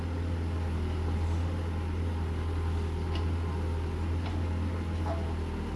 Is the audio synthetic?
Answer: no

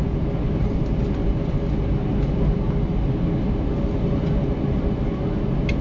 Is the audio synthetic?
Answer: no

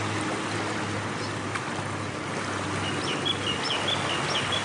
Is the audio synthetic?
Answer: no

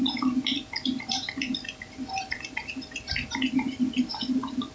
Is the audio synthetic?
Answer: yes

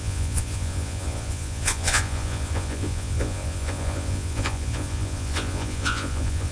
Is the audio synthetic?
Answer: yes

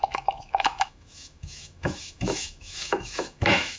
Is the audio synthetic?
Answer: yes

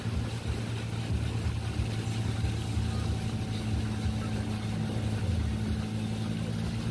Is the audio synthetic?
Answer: no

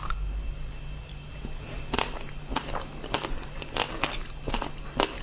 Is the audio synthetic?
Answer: no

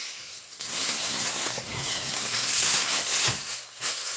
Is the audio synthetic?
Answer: yes